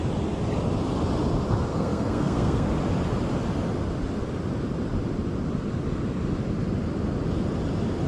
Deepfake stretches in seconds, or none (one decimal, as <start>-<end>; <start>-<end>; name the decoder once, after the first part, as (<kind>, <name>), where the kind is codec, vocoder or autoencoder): 1.7-2.7 (codec, SNAC)